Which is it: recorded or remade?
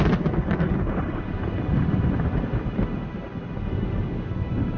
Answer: recorded